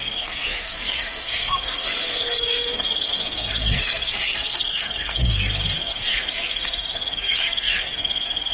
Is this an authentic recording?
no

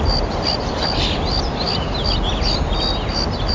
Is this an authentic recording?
yes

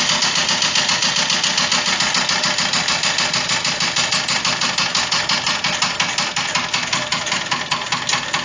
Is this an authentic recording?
yes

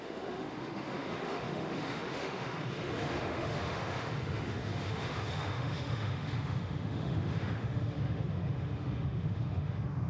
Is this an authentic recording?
no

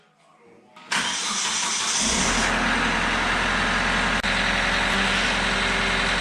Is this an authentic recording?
yes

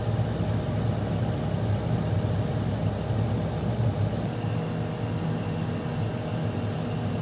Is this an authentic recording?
yes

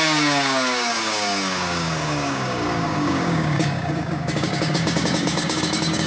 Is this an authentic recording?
no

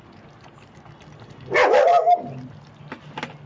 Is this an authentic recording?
yes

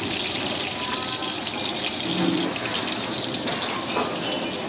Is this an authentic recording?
yes